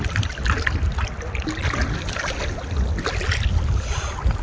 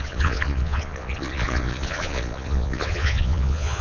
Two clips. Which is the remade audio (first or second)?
second